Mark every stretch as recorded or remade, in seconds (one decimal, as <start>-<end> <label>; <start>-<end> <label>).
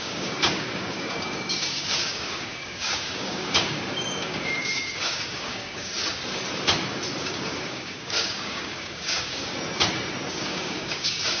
0.0-5.9 remade; 5.9-7.2 recorded; 7.2-9.5 remade; 9.5-10.3 recorded; 10.3-11.4 remade